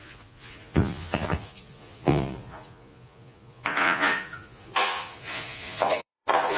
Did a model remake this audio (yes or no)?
yes